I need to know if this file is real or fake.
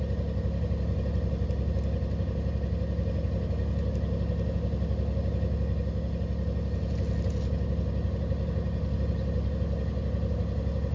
real